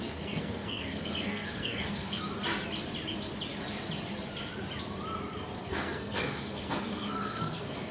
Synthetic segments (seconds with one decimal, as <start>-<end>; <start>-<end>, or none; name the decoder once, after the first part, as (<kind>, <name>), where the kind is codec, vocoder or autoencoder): 0.0-2.3 (codec, SNAC); 5.6-7.9